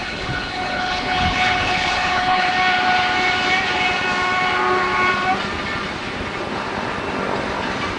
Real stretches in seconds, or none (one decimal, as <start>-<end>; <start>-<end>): 2.5-8.0